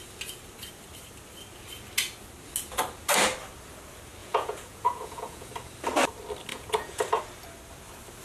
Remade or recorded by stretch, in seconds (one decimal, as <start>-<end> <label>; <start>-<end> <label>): 0.0-4.2 recorded; 4.2-5.5 remade; 5.5-6.5 recorded; 6.5-7.2 remade; 7.2-8.2 recorded